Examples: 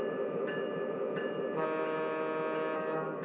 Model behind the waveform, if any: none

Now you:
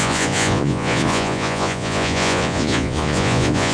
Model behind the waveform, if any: vocoder, Vocos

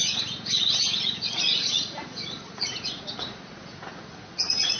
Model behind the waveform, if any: vocoder, Vocos